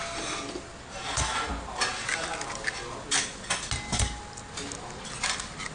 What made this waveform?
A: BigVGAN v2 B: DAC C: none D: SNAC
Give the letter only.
C